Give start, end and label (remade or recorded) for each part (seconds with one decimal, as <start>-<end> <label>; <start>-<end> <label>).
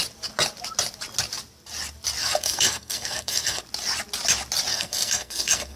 0.0-2.2 recorded; 2.2-3.6 remade; 3.6-4.7 recorded; 4.7-5.8 remade